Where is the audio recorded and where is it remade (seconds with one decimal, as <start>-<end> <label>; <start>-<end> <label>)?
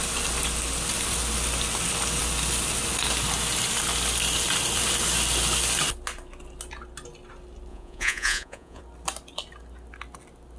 0.0-7.7 recorded; 7.7-8.8 remade; 8.8-10.6 recorded